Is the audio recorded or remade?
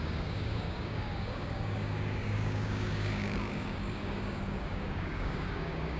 remade